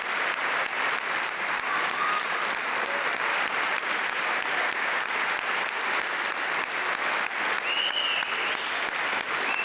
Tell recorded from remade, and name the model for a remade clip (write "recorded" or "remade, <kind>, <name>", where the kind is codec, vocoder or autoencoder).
recorded